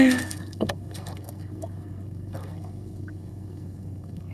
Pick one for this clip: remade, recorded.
remade